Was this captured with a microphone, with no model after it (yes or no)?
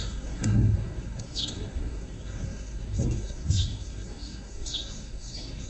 no